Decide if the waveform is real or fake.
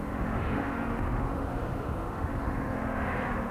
fake